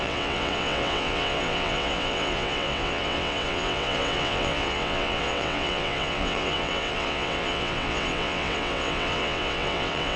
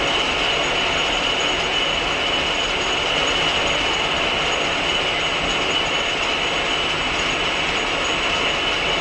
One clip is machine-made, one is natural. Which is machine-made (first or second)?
first